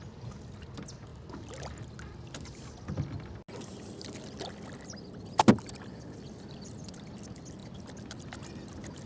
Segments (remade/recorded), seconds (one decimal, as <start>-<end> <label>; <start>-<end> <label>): 0.0-9.1 recorded